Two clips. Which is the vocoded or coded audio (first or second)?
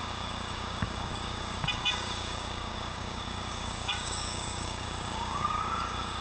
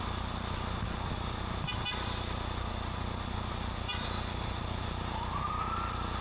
first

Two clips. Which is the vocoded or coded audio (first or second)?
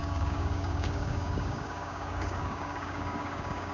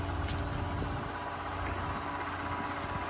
first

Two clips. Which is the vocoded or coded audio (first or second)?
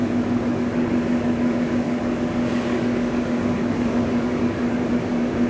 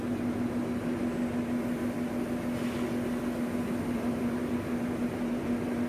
first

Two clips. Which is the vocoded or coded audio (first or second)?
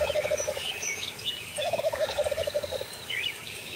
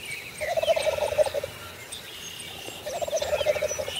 first